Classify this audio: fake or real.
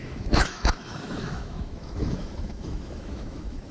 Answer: fake